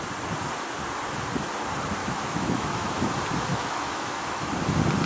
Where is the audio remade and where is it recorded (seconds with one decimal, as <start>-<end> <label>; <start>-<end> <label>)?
0.0-2.0 recorded; 2.0-3.1 remade; 3.1-3.5 recorded; 3.5-4.5 remade; 4.5-5.1 recorded